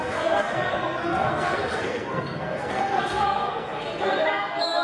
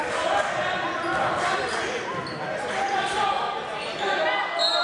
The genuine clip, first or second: second